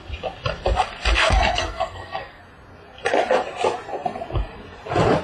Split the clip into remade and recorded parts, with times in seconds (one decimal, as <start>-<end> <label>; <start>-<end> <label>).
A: 0.0-1.2 recorded; 1.2-2.4 remade; 2.4-5.2 recorded

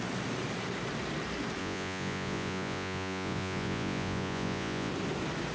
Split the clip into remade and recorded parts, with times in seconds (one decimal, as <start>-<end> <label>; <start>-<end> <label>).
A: 0.0-1.6 recorded; 1.6-4.9 remade; 4.9-5.5 recorded